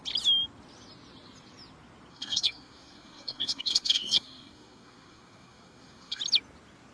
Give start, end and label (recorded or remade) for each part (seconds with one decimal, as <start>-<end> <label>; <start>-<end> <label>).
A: 0.0-2.1 recorded; 2.1-6.2 remade; 6.2-6.9 recorded